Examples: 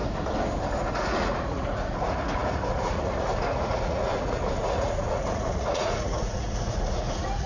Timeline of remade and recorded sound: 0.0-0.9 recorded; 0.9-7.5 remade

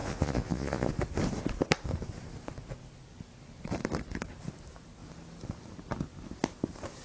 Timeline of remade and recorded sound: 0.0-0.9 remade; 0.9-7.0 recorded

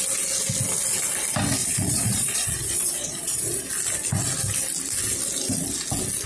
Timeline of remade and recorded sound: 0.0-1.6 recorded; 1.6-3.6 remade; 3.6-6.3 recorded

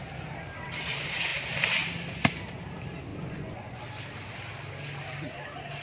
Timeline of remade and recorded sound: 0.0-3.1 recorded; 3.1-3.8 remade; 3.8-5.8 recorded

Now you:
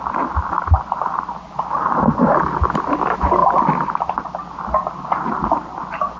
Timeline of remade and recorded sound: 0.0-6.2 recorded